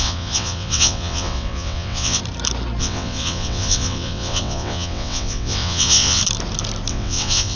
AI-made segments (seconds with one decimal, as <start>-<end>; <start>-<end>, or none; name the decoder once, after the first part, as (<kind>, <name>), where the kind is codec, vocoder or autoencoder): 0.0-2.2 (vocoder, WaveNeXt); 2.8-6.2; 6.9-7.6